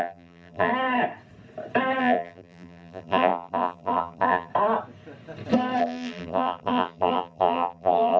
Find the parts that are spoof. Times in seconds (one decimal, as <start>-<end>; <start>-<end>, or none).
0.0-0.7; 2.0-4.5; 5.8-8.2